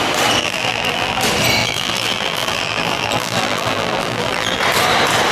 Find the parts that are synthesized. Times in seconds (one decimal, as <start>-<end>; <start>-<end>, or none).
0.4-1.2; 1.6-4.6